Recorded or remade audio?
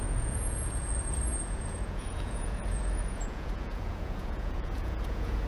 remade